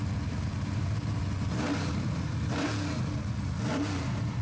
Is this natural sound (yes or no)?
no